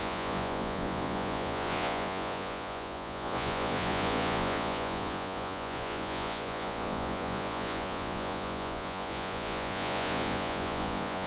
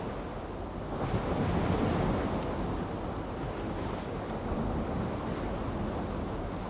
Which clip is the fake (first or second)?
first